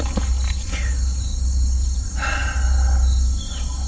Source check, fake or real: real